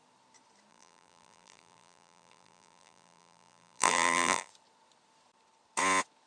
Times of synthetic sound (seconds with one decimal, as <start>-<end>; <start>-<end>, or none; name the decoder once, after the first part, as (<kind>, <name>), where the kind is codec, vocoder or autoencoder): 0.7-4.5 (vocoder, BigVGAN v2)